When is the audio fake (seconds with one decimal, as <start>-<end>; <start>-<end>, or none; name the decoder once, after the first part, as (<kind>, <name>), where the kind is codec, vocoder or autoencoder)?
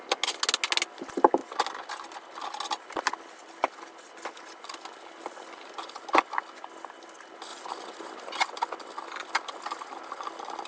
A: none